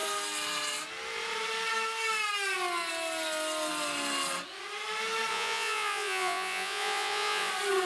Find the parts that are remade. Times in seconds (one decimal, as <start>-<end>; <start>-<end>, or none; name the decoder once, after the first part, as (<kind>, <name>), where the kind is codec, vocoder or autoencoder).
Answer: 5.3-7.5 (vocoder, Vocos)